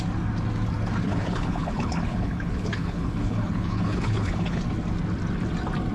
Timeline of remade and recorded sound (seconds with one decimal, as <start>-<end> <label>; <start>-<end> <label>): 0.0-1.1 recorded; 1.1-4.6 remade; 4.6-5.9 recorded